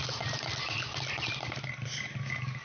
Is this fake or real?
real